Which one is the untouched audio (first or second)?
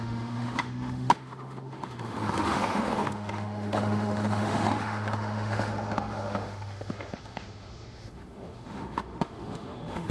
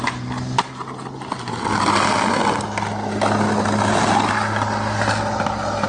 second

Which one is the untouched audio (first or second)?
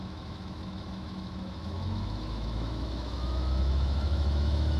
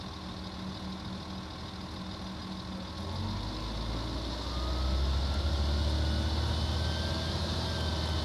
second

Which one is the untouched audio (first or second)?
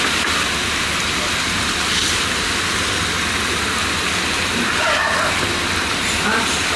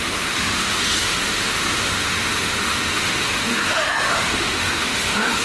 first